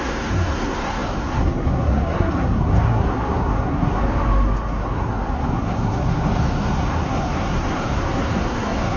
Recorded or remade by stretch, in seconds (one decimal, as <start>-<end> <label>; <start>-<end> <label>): 0.0-4.0 remade; 4.0-4.7 recorded; 4.7-9.0 remade